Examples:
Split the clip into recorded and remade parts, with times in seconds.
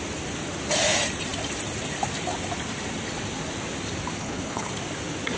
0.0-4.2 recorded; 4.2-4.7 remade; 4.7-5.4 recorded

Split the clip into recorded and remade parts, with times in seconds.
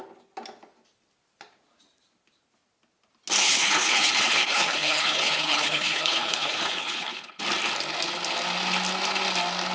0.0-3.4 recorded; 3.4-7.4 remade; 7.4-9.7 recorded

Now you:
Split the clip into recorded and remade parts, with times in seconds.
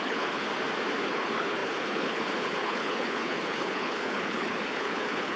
0.0-0.5 remade; 0.5-1.0 recorded; 1.0-5.4 remade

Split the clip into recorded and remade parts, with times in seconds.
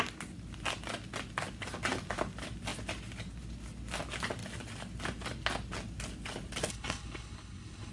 0.0-6.7 recorded; 6.7-7.9 remade